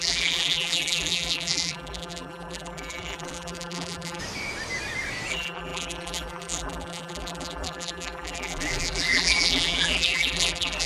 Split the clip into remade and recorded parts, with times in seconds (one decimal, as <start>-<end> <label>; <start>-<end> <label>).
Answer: 0.0-4.2 remade; 4.2-5.3 recorded; 5.3-10.9 remade